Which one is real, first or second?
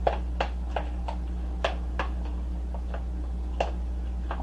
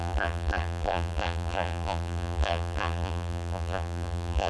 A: first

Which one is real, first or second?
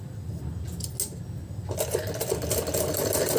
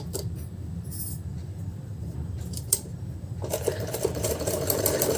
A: first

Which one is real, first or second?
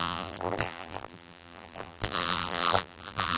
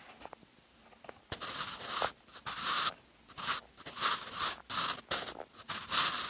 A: second